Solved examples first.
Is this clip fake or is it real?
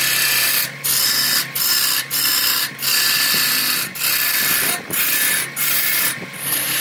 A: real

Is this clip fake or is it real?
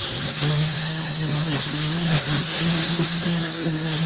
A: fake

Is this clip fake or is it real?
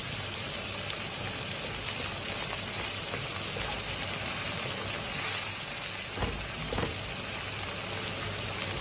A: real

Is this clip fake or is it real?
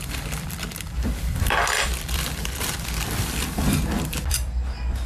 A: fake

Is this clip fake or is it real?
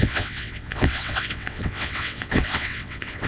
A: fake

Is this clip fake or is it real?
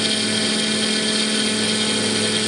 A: real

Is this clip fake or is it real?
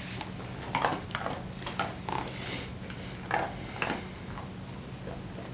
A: real